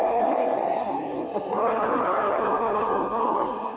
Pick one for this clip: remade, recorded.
remade